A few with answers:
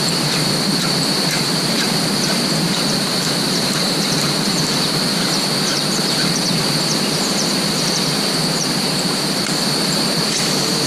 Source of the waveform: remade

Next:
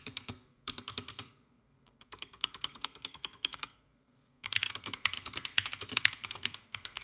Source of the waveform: remade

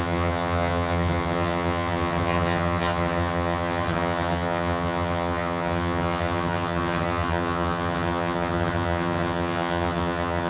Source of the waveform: remade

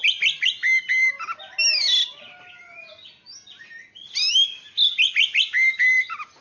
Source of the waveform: recorded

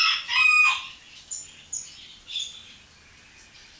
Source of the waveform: recorded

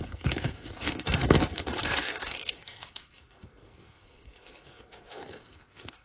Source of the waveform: remade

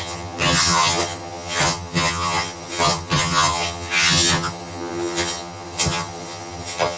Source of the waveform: remade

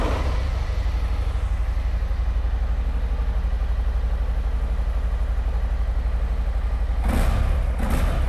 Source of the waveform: recorded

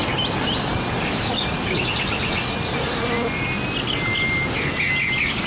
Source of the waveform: recorded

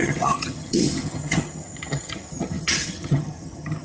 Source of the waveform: remade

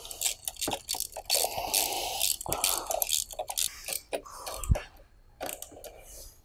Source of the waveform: recorded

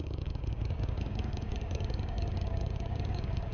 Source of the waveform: remade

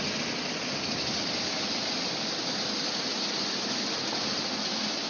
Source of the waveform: recorded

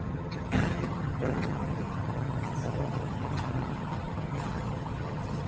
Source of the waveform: remade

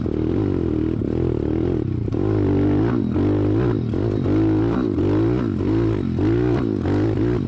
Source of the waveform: recorded